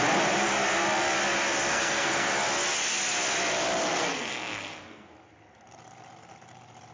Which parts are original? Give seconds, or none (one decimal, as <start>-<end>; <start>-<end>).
0.0-1.7; 2.3-3.9; 5.1-6.9